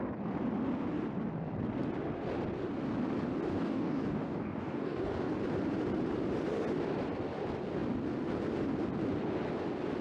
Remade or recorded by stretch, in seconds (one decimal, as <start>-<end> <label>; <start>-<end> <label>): 0.0-3.5 recorded; 3.5-5.3 remade; 5.3-10.0 recorded